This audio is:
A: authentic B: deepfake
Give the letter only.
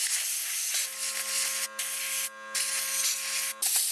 A